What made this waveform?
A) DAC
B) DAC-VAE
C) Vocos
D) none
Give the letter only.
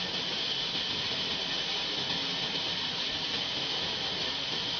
D